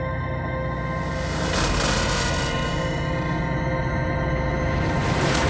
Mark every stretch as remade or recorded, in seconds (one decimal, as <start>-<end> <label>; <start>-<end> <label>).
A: 0.0-4.5 recorded; 4.5-5.5 remade